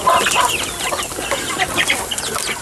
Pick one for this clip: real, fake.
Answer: real